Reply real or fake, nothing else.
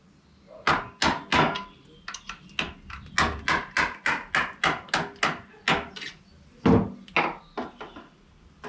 real